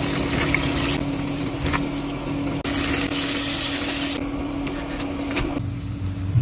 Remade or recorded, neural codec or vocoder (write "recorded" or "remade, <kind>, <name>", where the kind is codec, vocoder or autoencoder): recorded